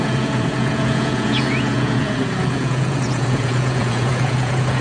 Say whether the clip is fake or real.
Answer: fake